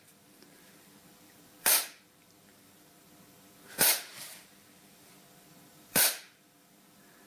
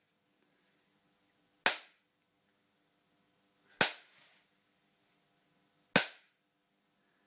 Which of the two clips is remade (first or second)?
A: first